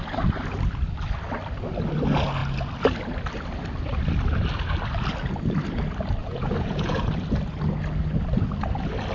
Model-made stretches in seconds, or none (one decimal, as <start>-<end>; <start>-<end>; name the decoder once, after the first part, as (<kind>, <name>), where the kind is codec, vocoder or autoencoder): 6.2-7.1 (vocoder, Vocos)